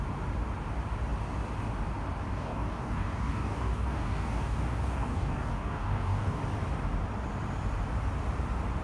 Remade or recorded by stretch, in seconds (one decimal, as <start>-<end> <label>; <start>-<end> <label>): 0.0-2.3 recorded; 2.3-6.4 remade; 6.4-8.8 recorded